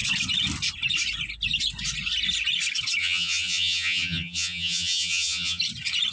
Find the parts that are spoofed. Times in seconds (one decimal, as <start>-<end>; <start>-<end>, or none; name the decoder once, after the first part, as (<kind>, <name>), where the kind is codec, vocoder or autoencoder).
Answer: 3.0-5.6 (vocoder, HiFi-GAN)